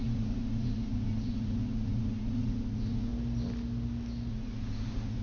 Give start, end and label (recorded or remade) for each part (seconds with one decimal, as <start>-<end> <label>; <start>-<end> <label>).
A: 0.0-3.1 remade; 3.1-4.3 recorded; 4.3-5.2 remade